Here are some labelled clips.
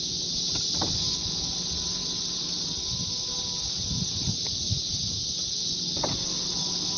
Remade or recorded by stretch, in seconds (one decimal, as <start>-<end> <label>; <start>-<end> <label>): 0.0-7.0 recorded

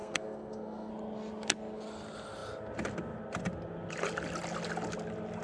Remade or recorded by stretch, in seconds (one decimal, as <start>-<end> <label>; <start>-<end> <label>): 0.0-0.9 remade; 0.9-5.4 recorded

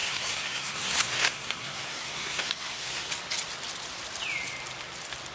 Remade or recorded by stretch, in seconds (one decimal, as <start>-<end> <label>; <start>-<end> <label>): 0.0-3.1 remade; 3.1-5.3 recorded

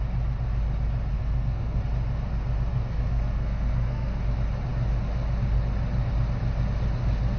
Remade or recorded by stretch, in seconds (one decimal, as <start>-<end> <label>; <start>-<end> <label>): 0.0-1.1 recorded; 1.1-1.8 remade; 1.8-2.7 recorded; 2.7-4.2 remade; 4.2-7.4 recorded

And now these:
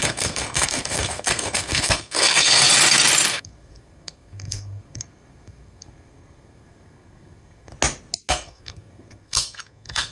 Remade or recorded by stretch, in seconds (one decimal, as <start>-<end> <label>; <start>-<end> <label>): 0.0-2.6 remade; 2.6-3.3 recorded; 3.3-7.7 remade; 7.7-8.3 recorded; 8.3-10.1 remade

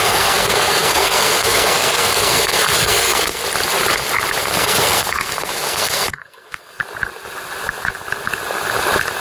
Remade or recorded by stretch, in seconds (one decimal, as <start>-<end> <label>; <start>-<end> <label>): 0.0-3.4 remade; 3.4-4.4 recorded; 4.4-6.8 remade; 6.8-9.2 recorded

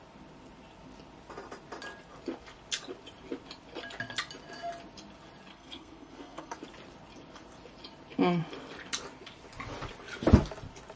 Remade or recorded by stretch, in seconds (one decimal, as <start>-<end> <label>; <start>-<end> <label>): 0.0-5.5 recorded; 5.5-6.6 remade; 6.6-11.0 recorded